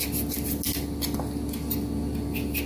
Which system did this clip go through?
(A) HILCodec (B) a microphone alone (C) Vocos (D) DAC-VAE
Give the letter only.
B